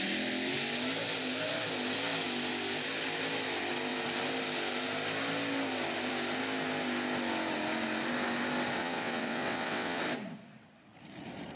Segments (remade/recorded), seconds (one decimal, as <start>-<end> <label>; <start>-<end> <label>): 0.0-8.8 recorded; 8.8-10.0 remade; 10.0-11.6 recorded